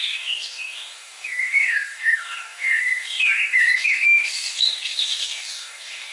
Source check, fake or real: fake